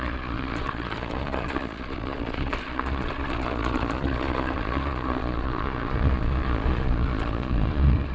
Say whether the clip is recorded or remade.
remade